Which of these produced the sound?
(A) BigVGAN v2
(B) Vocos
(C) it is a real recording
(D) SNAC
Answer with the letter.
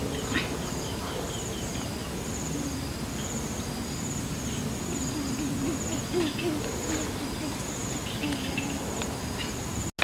C